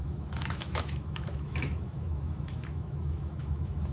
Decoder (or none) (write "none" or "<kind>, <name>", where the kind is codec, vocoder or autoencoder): autoencoder, DAC-VAE